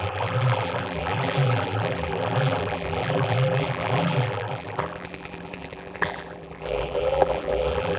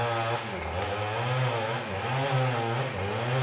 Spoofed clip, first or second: first